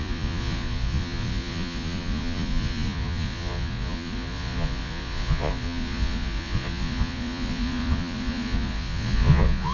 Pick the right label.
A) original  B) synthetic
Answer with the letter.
B